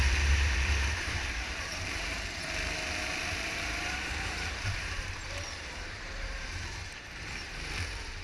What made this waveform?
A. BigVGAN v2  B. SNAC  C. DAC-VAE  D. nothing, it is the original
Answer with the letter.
A